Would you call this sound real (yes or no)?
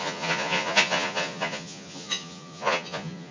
no